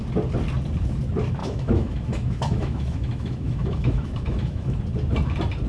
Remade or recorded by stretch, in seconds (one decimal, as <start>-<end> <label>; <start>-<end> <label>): 0.0-1.4 recorded; 1.4-4.8 remade; 4.8-5.7 recorded